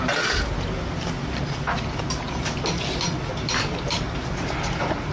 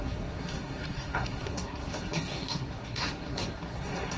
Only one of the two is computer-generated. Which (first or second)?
second